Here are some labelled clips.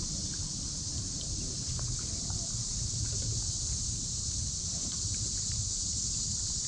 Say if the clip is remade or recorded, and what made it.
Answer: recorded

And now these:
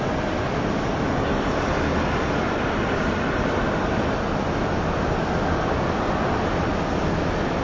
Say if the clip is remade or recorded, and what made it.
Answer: remade, vocoder, BigVGAN v2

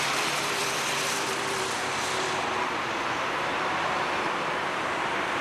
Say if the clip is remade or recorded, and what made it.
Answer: remade, vocoder, BigVGAN v2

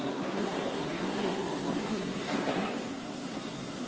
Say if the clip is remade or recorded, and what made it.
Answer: remade, codec, SNAC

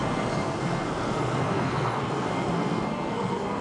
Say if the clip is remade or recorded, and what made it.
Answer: remade, codec, SNAC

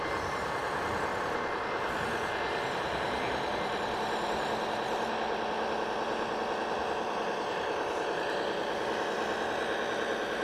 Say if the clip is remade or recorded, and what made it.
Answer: recorded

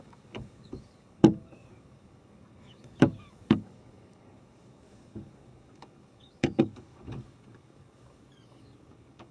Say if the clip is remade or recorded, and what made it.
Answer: remade, codec, DAC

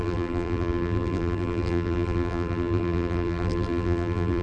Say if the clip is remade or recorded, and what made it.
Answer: remade, vocoder, BigVGAN v2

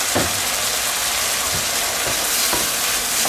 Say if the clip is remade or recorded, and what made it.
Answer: recorded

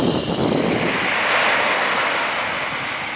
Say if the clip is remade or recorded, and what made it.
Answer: recorded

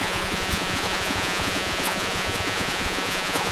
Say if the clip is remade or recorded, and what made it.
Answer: remade, vocoder, Vocos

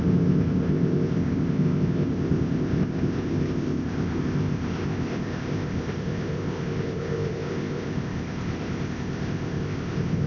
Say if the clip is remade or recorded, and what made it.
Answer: remade, codec, ZipCodec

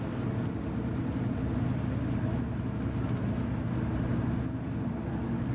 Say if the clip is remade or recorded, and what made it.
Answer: recorded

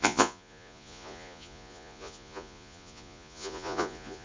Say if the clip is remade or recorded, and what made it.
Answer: remade, vocoder, Vocos